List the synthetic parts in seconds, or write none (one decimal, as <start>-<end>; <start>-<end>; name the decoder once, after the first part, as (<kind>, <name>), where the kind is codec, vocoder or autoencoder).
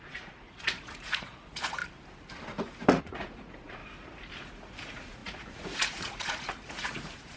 0.0-1.8 (vocoder, Vocos); 3.0-3.8; 4.4-7.4